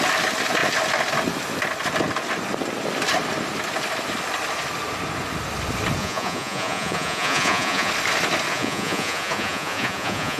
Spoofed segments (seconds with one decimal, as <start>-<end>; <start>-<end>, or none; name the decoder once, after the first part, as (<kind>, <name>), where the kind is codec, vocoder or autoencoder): 6.0-7.9 (vocoder, Vocos); 8.5-10.4